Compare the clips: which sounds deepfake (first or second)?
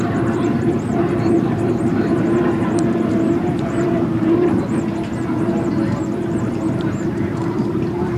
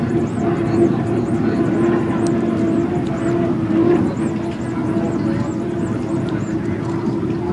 first